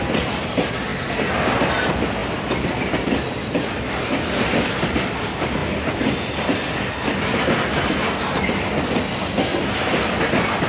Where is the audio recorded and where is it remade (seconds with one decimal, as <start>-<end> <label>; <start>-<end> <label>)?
0.0-10.7 recorded